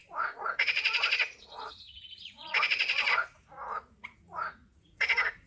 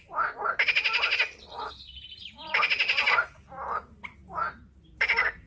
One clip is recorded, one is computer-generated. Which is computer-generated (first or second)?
first